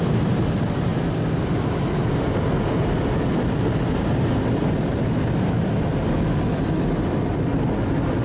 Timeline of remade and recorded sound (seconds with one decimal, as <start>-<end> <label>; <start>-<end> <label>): 0.0-8.2 recorded